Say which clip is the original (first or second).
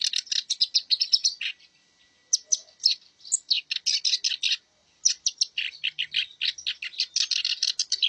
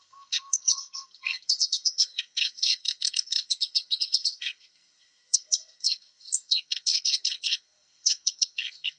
first